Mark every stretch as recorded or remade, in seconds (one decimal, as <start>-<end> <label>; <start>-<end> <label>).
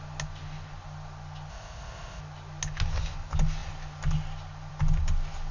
0.0-1.5 recorded; 1.5-2.2 remade; 2.2-5.5 recorded